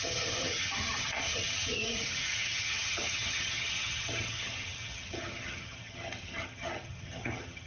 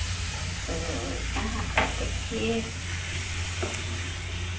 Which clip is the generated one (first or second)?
first